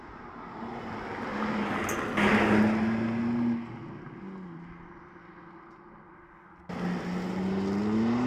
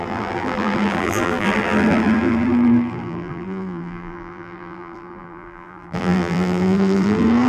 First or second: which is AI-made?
second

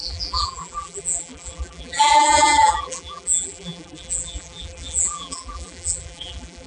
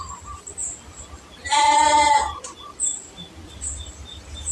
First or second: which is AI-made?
first